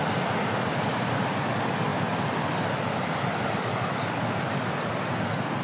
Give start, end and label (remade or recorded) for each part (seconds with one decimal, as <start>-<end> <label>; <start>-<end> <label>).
0.0-5.6 recorded